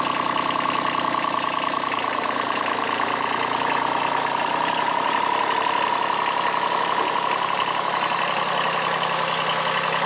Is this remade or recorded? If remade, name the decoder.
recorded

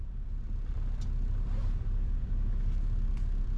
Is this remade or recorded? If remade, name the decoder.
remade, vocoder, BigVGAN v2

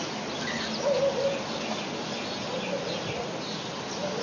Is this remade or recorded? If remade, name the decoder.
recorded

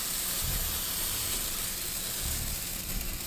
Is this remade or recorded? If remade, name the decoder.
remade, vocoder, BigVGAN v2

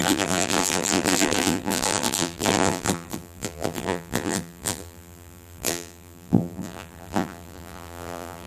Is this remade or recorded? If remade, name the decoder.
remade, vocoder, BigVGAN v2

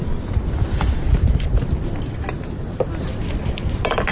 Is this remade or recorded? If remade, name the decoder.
recorded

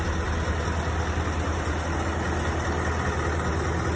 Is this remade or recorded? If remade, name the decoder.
recorded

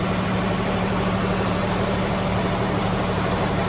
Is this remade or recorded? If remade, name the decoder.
remade, vocoder, BigVGAN v2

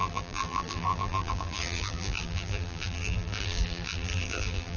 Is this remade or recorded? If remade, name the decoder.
remade, vocoder, BigVGAN v2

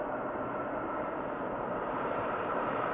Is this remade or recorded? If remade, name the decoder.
remade, vocoder, BigVGAN v2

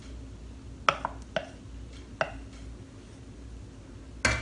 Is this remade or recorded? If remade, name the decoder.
recorded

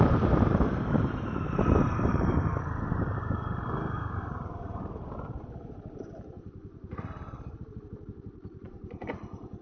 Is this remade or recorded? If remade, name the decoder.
remade, vocoder, BigVGAN v2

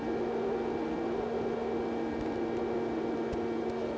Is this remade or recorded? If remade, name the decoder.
recorded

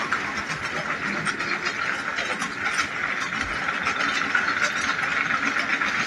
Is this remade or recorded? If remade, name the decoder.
recorded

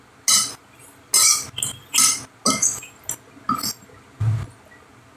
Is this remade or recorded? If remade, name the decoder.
recorded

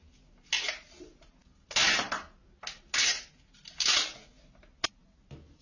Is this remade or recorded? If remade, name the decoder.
recorded